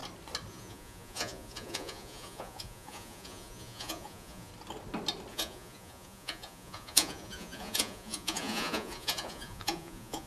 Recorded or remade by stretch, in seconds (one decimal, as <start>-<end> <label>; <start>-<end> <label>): 0.0-0.5 recorded; 0.5-4.5 remade; 4.5-5.3 recorded; 5.3-10.3 remade